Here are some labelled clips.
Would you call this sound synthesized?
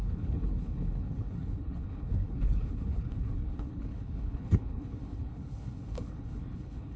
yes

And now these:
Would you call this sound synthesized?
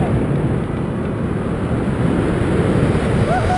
no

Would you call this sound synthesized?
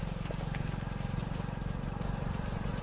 no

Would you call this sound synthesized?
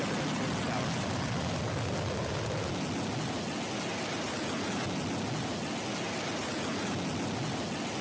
no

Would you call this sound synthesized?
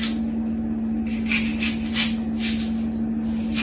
no